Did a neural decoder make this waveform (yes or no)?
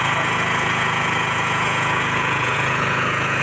yes